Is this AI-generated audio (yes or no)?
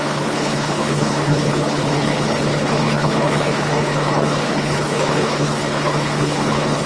yes